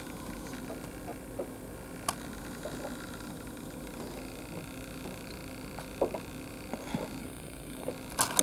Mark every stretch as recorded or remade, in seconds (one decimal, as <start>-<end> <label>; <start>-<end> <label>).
0.0-7.2 recorded; 7.2-7.9 remade; 7.9-8.4 recorded